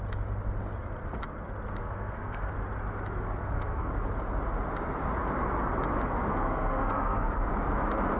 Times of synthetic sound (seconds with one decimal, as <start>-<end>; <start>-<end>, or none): 1.8-2.5; 3.4-3.9; 6.3-7.5